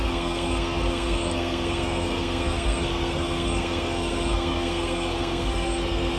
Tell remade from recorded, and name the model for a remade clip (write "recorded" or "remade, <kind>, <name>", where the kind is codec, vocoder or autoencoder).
remade, codec, SNAC